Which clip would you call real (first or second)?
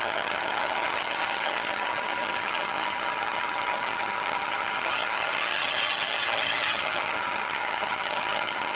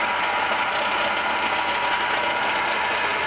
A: second